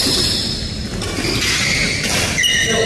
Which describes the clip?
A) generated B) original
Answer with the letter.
B